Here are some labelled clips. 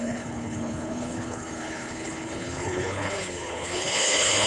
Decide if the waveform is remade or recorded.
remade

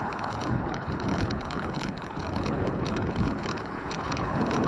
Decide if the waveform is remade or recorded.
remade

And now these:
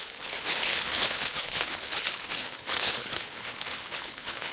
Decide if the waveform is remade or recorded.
remade